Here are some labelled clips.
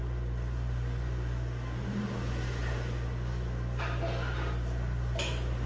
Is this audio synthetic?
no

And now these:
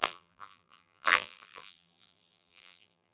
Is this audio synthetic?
yes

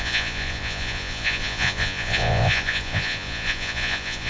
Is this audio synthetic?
yes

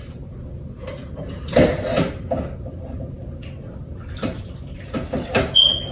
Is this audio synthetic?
no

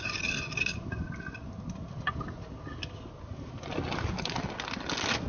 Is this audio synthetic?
no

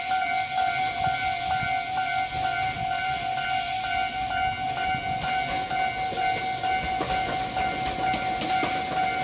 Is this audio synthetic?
no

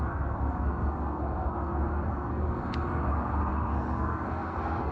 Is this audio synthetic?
yes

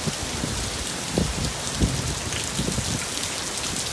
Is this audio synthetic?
no